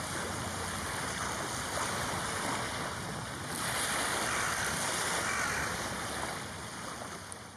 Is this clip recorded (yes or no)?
yes